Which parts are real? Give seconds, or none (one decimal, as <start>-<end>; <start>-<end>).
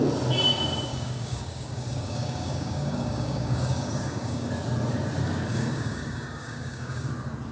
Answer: 0.0-0.9; 4.5-5.5; 7.1-7.5